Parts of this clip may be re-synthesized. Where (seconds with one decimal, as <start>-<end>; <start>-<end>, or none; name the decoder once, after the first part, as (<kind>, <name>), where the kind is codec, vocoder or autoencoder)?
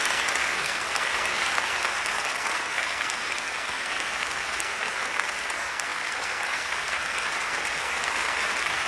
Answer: 0.0-8.9 (codec, SNAC)